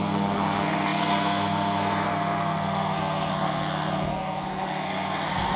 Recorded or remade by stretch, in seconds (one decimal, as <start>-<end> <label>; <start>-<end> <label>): 0.0-5.6 remade